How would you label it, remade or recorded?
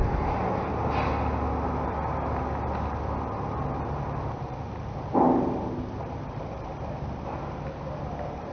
recorded